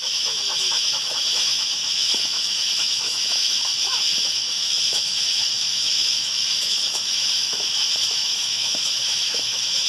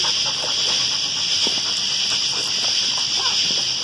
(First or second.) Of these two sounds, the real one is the second